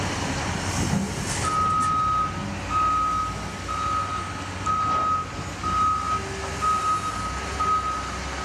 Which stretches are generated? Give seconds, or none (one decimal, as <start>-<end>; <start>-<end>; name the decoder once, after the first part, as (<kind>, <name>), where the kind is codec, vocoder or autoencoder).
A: none